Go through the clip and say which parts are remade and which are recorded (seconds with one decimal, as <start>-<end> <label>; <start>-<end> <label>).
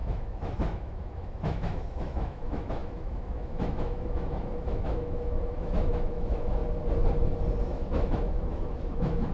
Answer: 0.0-6.6 remade; 6.6-7.6 recorded; 7.6-9.3 remade